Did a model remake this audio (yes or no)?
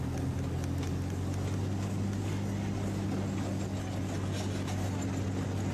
no